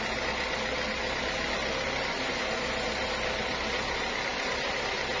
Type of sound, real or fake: real